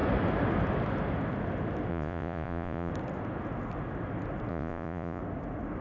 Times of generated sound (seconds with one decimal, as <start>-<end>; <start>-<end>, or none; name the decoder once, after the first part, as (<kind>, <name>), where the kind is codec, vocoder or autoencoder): 1.9-2.9 (vocoder, Vocos); 4.5-5.2